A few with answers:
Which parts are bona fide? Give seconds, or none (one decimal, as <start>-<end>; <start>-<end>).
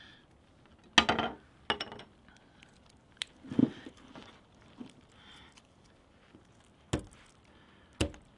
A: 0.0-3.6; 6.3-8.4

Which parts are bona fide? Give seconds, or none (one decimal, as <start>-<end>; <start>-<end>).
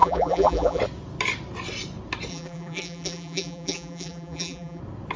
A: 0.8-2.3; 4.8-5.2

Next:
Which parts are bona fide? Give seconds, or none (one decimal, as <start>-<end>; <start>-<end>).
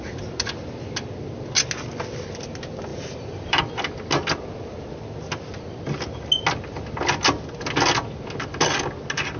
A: 0.0-2.9; 3.6-9.4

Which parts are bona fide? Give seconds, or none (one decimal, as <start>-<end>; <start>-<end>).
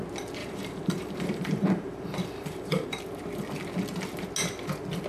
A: 0.0-0.4; 3.0-5.1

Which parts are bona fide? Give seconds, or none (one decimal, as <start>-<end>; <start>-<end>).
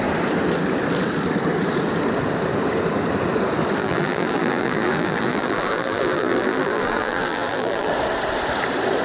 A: 0.0-3.8; 7.9-9.0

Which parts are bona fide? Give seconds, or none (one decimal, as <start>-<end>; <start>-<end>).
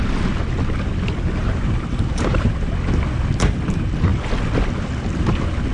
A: 0.0-1.4; 2.7-5.7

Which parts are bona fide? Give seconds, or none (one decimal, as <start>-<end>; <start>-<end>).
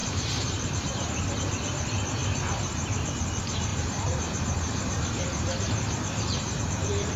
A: 1.3-3.7; 6.6-7.2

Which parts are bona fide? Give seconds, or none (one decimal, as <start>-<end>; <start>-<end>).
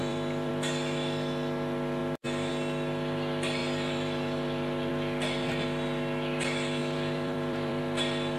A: 0.5-2.0; 2.5-3.6; 4.9-6.8; 7.8-8.4